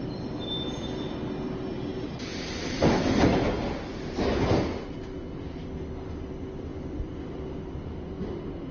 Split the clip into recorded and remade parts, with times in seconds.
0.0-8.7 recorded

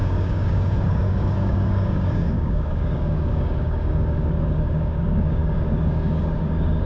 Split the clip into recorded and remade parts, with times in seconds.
0.0-6.9 remade

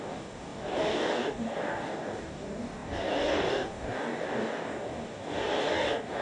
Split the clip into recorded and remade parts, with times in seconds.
0.0-6.2 remade

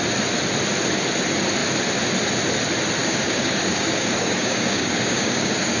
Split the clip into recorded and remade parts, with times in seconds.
0.0-3.0 recorded; 3.0-5.8 remade

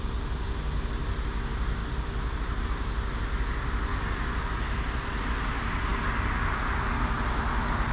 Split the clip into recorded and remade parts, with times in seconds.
0.0-7.9 recorded

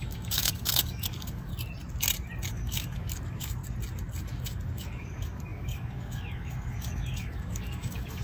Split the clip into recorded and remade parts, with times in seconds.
0.0-1.5 remade; 1.5-2.5 recorded; 2.5-3.6 remade; 3.6-4.2 recorded; 4.2-8.2 remade

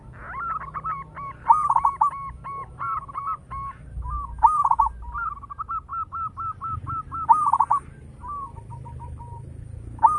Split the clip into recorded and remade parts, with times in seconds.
0.0-10.2 recorded